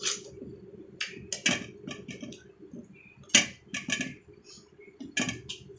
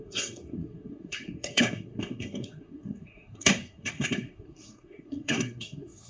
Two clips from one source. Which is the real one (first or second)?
first